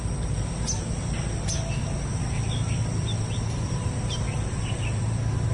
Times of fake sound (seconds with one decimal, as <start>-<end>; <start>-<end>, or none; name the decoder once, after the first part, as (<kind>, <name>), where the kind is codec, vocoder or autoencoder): none